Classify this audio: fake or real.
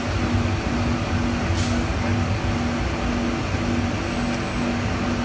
real